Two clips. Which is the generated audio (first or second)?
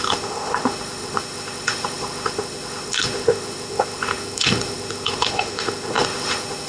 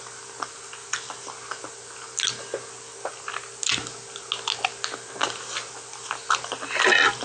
first